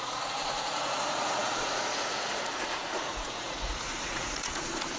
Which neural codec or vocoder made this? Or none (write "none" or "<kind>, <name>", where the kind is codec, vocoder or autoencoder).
vocoder, Vocos